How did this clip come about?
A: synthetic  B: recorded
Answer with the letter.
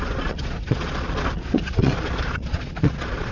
A